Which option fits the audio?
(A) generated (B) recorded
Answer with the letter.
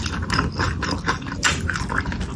B